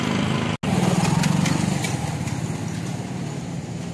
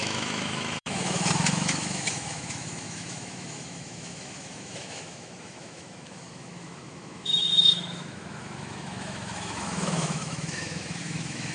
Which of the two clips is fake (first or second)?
second